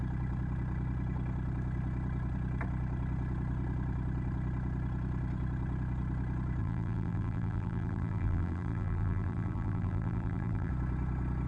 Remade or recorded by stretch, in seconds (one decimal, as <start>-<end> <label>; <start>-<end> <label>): 0.0-6.6 recorded; 6.6-10.7 remade; 10.7-11.5 recorded